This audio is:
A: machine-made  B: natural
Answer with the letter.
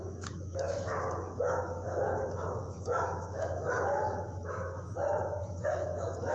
A